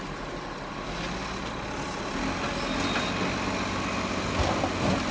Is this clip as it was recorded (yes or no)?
yes